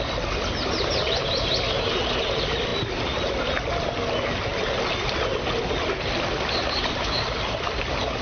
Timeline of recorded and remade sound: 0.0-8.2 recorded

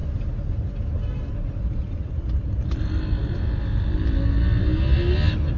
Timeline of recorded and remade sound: 0.0-5.6 recorded

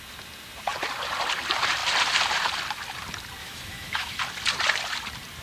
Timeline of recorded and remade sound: 0.0-3.4 recorded; 3.4-4.2 remade; 4.2-5.4 recorded

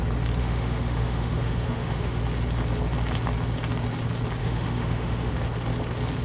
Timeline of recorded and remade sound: 0.0-0.4 recorded; 0.4-2.2 remade; 2.2-4.4 recorded; 4.4-5.3 remade; 5.3-6.2 recorded